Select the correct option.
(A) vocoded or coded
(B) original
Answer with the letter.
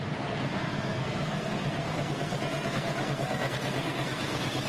A